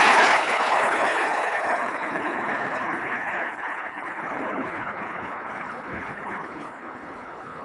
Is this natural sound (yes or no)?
no